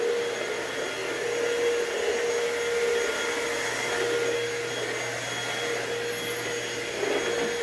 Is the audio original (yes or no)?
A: yes